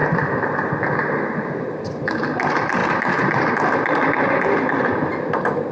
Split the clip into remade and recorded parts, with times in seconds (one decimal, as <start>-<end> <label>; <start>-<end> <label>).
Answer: 0.0-2.8 recorded; 2.8-3.5 remade; 3.5-5.7 recorded